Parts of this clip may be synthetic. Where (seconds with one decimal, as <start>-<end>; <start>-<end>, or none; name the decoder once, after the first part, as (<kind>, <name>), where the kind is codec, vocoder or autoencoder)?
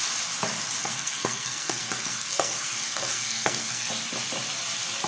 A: 0.8-3.9 (codec, SNAC)